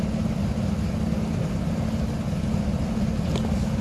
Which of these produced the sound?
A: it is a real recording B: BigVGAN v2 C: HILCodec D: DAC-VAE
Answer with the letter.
A